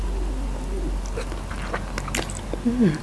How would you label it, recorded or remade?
recorded